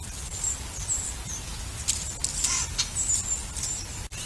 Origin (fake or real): real